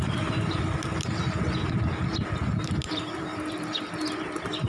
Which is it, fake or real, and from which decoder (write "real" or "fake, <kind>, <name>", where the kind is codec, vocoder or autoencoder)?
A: real